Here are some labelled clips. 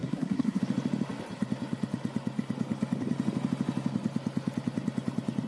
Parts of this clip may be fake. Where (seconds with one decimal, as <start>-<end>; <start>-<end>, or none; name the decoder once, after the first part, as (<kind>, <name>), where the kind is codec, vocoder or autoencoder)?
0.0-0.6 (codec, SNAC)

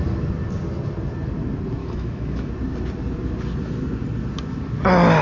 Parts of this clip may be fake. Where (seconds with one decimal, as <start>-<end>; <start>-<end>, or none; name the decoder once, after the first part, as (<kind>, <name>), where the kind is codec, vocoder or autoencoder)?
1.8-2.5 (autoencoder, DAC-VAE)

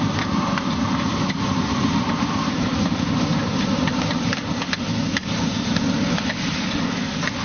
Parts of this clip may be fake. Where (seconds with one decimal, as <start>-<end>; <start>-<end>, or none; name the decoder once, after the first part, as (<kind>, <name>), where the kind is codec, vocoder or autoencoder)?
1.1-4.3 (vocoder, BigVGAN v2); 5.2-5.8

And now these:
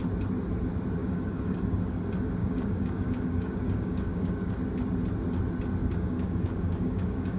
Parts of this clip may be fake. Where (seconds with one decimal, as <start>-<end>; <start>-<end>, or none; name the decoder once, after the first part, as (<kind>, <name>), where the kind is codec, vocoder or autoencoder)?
1.0-2.0 (codec, DAC); 2.4-4.5; 5.8-7.4

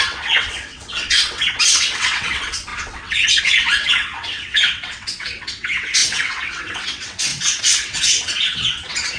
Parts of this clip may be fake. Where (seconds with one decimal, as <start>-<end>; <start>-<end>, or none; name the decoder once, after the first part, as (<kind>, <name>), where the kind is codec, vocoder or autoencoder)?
0.0-9.2 (vocoder, WaveNeXt)